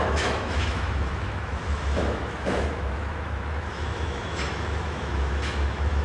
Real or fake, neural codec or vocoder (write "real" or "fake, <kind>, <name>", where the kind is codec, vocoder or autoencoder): fake, autoencoder, DAC-VAE